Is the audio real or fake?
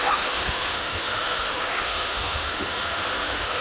fake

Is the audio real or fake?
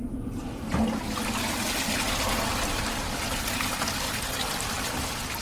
real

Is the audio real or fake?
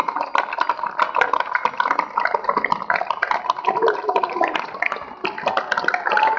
fake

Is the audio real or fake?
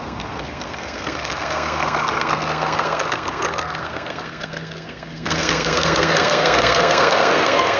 fake